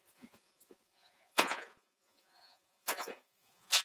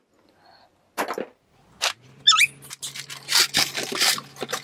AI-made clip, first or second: first